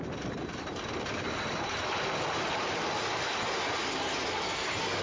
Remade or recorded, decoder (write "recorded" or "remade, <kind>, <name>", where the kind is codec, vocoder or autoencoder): recorded